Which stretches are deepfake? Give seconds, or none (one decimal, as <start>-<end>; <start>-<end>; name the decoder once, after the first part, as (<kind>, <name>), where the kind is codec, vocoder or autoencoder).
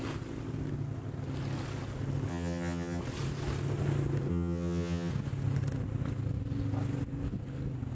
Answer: 2.3-3.0 (vocoder, HiFi-GAN); 4.3-5.1